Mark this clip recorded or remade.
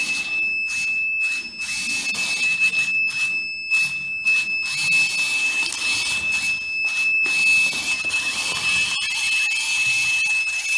recorded